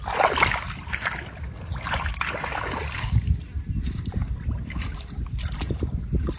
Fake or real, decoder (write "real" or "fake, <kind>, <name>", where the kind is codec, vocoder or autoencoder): real